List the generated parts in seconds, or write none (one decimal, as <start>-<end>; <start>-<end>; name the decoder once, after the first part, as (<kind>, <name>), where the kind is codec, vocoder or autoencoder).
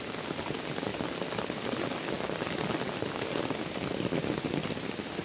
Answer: none